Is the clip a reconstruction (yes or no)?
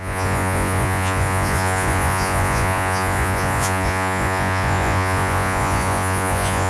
yes